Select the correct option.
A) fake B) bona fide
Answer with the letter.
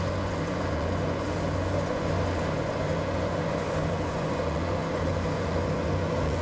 A